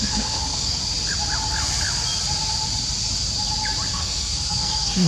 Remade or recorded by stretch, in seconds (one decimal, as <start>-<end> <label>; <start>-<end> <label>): 0.0-0.8 remade; 0.8-3.9 recorded; 3.9-5.1 remade